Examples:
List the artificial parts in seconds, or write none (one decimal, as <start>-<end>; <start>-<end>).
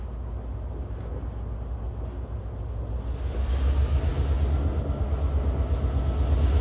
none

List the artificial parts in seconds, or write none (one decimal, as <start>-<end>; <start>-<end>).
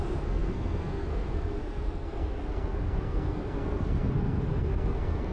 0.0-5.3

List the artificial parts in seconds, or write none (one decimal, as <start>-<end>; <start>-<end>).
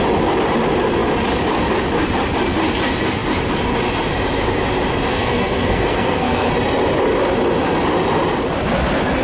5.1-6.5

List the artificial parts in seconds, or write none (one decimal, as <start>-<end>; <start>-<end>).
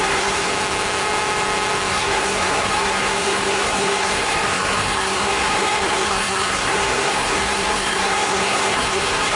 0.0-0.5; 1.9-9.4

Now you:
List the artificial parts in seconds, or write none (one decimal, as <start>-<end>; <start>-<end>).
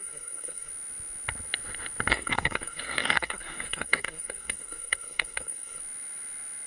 0.0-0.7; 2.1-5.8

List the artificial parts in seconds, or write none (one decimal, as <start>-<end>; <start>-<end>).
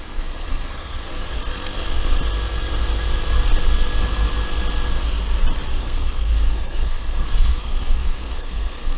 0.0-1.1; 5.8-9.0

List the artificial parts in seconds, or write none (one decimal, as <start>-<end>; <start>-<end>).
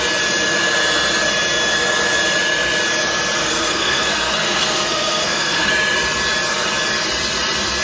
3.4-5.7